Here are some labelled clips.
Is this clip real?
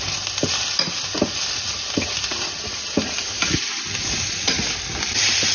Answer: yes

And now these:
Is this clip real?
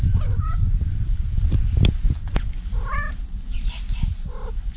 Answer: yes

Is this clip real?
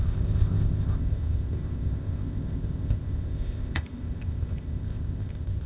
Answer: no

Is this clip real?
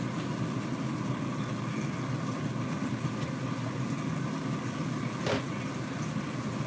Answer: yes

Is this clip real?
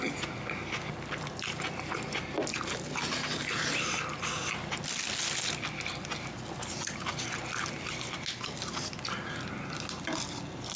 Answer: yes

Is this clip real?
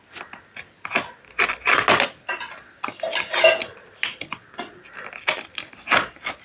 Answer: yes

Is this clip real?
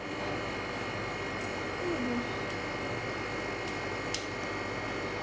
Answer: yes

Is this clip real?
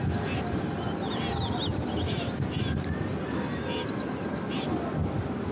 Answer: yes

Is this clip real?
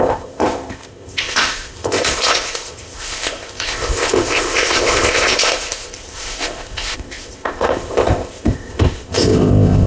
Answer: no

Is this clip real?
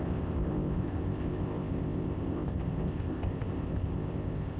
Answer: no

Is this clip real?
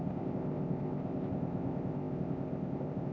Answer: no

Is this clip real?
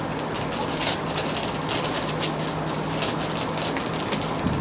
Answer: yes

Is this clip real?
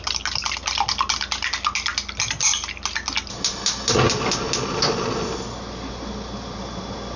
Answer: yes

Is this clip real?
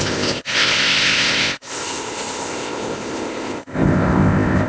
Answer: no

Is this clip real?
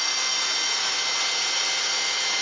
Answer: yes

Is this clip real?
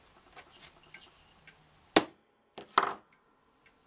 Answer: yes